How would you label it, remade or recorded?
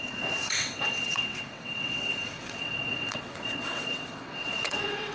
remade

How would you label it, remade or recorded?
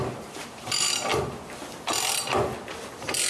recorded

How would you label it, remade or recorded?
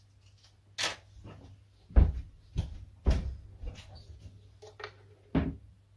recorded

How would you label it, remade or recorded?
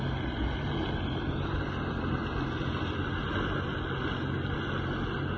recorded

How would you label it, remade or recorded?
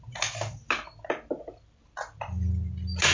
recorded